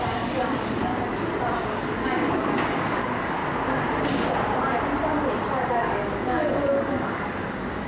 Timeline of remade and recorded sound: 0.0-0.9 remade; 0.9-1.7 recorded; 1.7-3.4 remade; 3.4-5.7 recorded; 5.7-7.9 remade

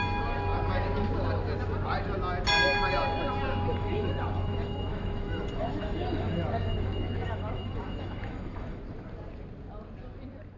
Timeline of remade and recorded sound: 0.0-3.7 recorded; 3.7-8.8 remade; 8.8-10.6 recorded

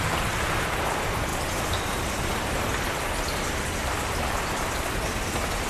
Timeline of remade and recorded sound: 0.0-5.7 recorded